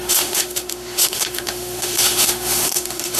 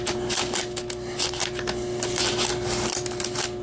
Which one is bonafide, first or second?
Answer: second